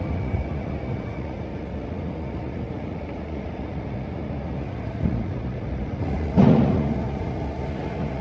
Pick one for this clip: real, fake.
fake